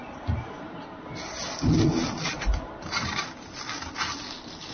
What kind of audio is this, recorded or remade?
recorded